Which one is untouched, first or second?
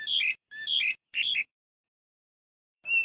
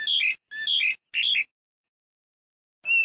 second